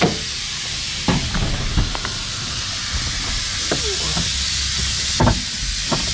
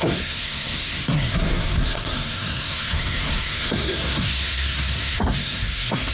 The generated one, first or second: second